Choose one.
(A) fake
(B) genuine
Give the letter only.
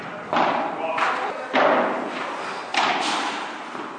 B